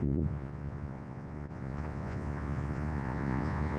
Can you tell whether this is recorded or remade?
remade